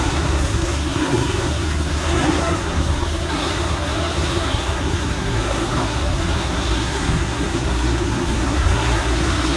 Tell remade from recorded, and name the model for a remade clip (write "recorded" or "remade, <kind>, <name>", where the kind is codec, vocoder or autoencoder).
remade, codec, SNAC